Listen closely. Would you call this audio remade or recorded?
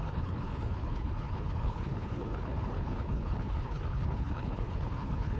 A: remade